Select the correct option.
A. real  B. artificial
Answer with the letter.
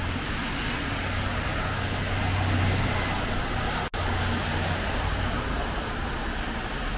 A